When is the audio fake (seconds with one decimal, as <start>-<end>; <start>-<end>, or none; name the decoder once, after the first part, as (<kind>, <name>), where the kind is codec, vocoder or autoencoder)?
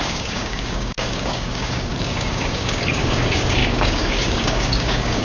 0.0-5.2 (codec, DAC)